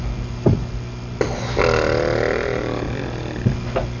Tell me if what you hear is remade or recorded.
recorded